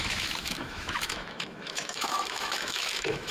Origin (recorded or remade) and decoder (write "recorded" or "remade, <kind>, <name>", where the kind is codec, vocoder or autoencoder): remade, autoencoder, DAC-VAE